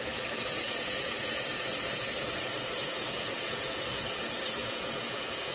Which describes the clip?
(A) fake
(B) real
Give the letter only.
A